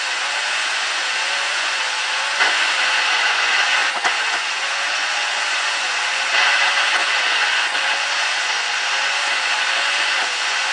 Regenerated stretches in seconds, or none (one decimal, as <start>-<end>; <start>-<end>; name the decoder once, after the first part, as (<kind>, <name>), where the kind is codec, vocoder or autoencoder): 0.0-10.7 (vocoder, Vocos)